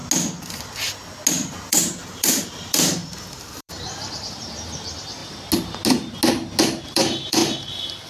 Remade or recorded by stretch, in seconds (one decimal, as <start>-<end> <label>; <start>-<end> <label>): 0.0-1.5 recorded; 1.5-5.2 remade; 5.2-6.6 recorded; 6.6-7.4 remade; 7.4-8.1 recorded